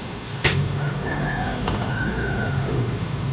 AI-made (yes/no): yes